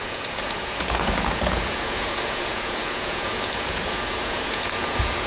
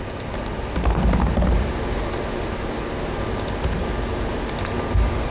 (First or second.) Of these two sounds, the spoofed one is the first